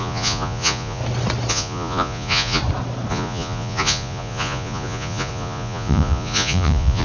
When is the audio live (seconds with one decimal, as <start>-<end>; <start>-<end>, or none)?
1.0-1.5; 2.6-3.1